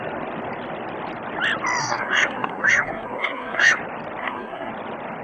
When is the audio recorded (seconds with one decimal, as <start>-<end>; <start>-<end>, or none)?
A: 0.0-1.8; 3.8-4.2; 4.7-5.2